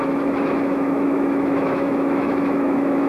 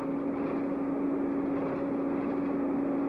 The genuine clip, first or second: second